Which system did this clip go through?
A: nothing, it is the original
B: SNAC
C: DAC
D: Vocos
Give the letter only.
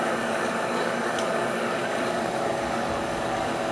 C